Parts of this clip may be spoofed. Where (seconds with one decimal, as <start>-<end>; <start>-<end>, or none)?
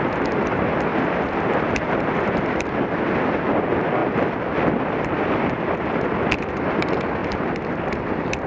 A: 0.9-2.6; 4.0-6.8; 7.2-8.5